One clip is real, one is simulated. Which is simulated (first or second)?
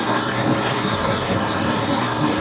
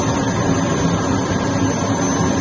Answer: first